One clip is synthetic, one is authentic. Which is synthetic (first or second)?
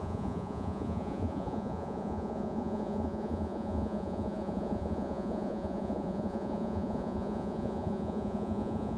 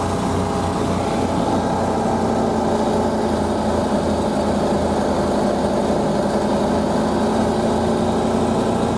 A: first